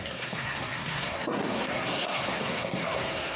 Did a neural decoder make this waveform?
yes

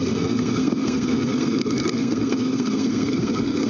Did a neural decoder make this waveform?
yes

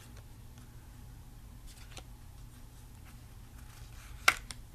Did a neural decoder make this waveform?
no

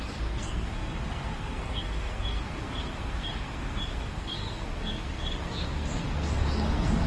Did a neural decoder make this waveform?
yes